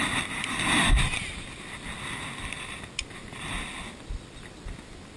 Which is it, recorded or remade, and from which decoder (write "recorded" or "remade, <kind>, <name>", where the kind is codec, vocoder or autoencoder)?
recorded